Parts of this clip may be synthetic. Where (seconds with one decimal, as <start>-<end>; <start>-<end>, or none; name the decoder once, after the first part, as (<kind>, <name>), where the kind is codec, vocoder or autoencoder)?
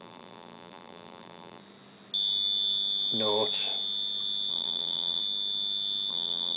0.0-1.6 (vocoder, BigVGAN v2); 4.5-5.2; 6.1-6.6